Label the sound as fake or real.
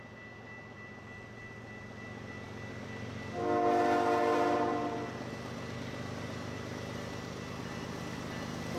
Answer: real